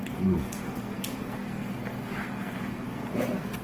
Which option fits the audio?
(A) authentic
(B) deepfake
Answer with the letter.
B